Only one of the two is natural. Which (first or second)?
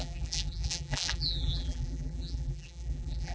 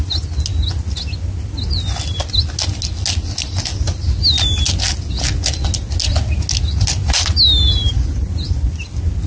second